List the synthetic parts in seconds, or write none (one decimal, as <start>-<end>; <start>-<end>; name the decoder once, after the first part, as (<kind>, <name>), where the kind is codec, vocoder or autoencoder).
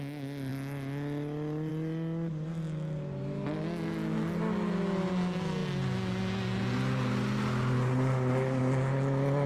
none